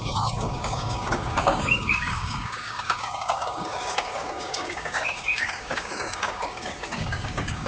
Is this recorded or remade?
remade